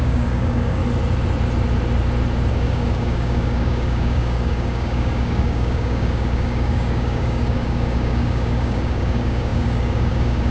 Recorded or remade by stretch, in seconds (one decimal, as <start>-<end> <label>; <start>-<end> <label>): 0.0-0.8 remade; 0.8-2.5 recorded; 2.5-10.5 remade